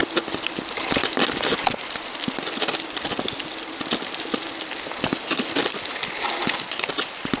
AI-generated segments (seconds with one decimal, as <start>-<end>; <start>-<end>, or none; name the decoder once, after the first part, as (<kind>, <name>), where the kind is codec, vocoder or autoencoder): none